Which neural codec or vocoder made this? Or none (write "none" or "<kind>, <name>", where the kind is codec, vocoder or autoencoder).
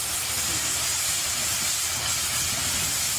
none